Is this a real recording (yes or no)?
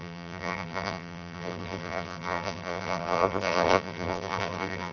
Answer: no